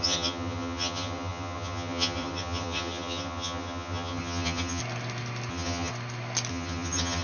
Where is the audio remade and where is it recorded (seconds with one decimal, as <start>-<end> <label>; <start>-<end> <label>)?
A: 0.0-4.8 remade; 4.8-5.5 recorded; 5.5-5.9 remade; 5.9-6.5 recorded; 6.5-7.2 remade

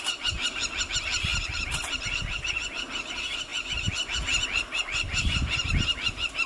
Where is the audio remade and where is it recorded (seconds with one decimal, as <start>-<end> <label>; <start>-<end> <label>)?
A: 0.0-1.3 recorded; 1.3-2.0 remade; 2.0-6.5 recorded

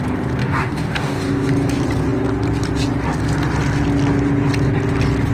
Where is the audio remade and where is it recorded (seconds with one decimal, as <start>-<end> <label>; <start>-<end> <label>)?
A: 0.0-0.4 recorded; 0.4-1.5 remade; 1.5-5.3 recorded

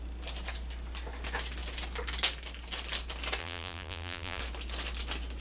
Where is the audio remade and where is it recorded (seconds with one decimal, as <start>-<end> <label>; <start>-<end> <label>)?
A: 0.0-3.4 recorded; 3.4-4.4 remade; 4.4-5.4 recorded

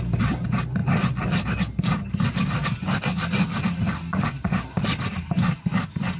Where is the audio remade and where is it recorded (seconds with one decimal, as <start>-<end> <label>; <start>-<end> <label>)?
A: 0.0-6.2 recorded

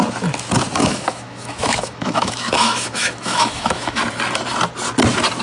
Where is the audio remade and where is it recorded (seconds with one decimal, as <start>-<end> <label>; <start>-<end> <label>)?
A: 0.0-0.8 recorded; 0.8-4.0 remade; 4.0-5.4 recorded

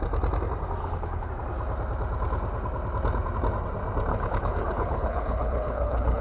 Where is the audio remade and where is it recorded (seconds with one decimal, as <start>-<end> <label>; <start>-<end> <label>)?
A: 0.0-0.8 recorded; 0.8-1.3 remade; 1.3-4.1 recorded; 4.1-6.2 remade